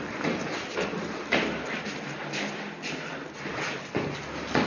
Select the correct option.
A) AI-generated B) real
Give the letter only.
A